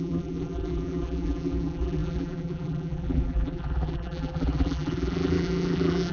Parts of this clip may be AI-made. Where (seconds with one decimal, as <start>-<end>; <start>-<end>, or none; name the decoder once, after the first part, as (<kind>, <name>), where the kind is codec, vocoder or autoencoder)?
0.0-6.1 (vocoder, BigVGAN v2)